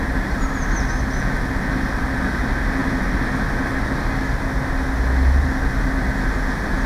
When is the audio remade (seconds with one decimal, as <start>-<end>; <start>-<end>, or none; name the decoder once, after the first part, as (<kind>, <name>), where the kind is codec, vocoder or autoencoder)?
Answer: none